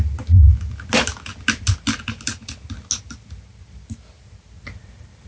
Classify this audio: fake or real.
real